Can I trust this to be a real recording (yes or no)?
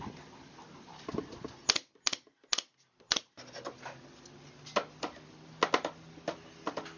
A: yes